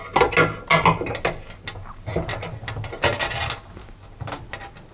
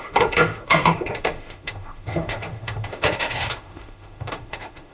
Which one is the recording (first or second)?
first